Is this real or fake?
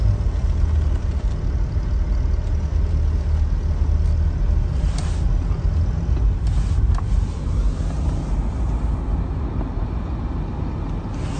real